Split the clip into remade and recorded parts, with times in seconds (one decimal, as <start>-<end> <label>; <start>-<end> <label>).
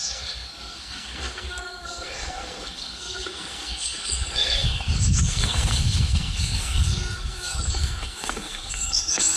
0.0-9.4 remade